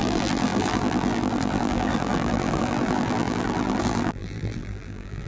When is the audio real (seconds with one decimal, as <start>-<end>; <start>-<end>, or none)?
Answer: none